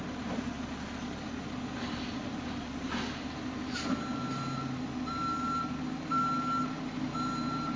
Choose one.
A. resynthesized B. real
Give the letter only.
B